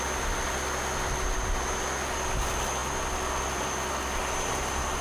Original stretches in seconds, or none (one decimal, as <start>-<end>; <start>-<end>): 0.0-5.0